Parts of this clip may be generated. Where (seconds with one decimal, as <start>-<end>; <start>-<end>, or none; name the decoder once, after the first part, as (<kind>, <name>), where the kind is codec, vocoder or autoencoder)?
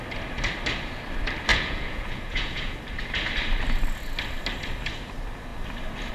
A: 1.5-2.7 (vocoder, Vocos)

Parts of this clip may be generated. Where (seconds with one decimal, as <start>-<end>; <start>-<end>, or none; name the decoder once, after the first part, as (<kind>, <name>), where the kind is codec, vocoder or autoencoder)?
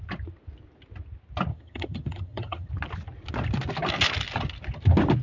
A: 1.5-2.7 (vocoder, HiFi-GAN)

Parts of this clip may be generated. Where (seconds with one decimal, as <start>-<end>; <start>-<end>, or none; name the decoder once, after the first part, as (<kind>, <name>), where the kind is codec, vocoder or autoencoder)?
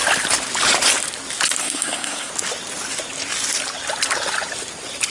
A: 1.6-2.3 (codec, SNAC)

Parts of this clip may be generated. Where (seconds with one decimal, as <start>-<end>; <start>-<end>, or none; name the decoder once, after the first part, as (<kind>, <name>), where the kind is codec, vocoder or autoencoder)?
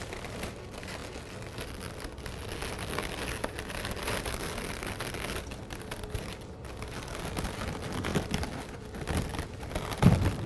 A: none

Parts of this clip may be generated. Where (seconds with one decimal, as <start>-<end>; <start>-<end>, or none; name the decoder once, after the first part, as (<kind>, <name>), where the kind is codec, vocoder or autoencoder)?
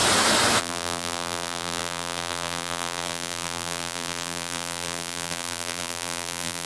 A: 0.6-6.7 (vocoder, BigVGAN v2)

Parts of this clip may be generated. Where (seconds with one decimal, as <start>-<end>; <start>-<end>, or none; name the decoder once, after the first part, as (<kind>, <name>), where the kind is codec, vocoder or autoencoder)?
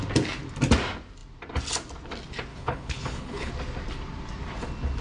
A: 2.5-3.5 (codec, HILCodec)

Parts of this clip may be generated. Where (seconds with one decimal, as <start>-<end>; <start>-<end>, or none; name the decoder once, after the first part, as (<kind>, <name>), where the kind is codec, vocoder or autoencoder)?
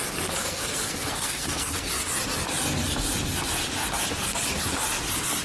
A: 0.4-1.9 (codec, SNAC)